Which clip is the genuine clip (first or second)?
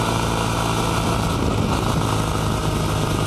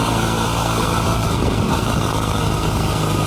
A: first